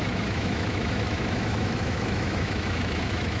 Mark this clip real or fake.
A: fake